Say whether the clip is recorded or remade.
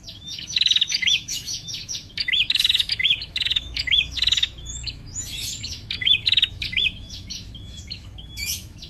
remade